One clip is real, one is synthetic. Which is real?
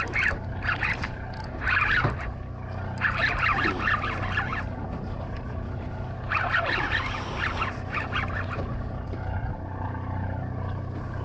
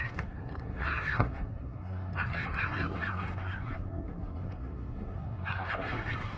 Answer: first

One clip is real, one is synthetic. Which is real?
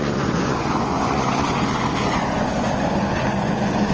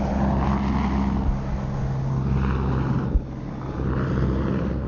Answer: second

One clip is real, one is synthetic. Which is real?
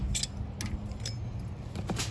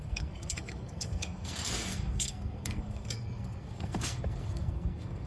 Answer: first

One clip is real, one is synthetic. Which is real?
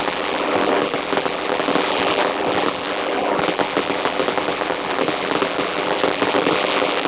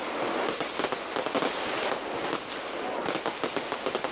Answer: second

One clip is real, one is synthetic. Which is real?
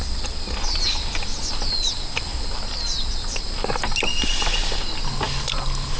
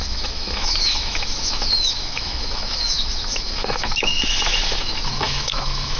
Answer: first